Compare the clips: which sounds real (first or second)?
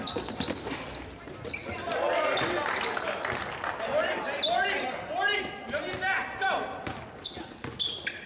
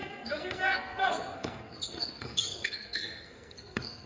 first